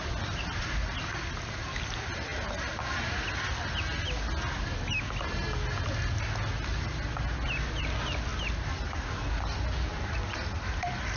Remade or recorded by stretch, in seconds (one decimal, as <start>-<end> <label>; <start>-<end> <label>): 0.0-11.2 recorded